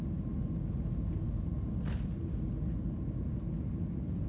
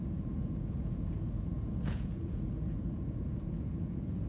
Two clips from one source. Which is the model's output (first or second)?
second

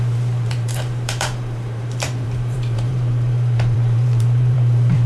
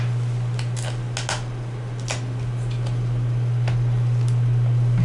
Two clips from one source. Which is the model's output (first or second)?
first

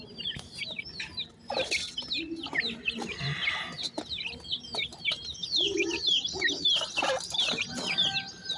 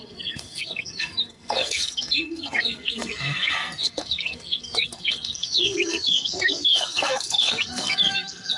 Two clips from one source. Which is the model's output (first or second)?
second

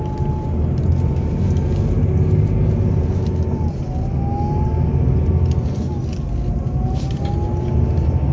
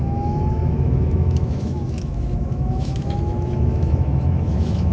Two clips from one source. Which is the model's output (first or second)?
second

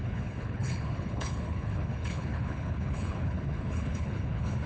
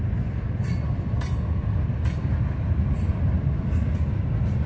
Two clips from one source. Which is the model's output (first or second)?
first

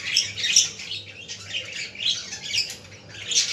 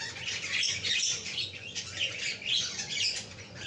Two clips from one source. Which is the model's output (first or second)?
second